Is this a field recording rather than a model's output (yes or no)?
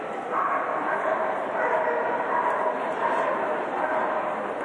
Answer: yes